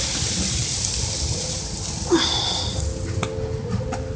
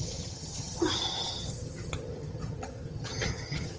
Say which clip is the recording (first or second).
first